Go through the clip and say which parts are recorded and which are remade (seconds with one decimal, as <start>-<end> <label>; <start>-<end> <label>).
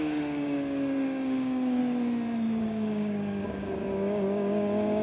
0.0-1.8 remade; 1.8-2.6 recorded; 2.6-5.0 remade